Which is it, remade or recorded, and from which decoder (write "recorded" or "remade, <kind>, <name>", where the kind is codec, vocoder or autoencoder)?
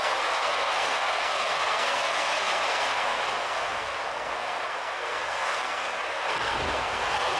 remade, codec, SNAC